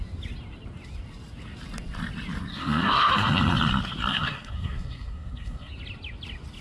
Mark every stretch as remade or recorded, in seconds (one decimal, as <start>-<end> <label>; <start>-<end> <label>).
0.0-2.5 recorded; 2.5-3.1 remade; 3.1-4.1 recorded; 4.1-5.7 remade; 5.7-6.6 recorded